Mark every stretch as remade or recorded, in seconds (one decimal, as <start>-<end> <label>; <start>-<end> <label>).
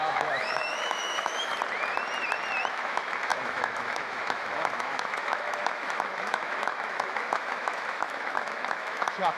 0.0-1.5 remade; 1.5-2.7 recorded; 2.7-9.4 remade